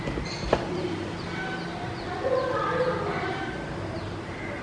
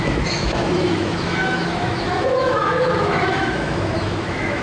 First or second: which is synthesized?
second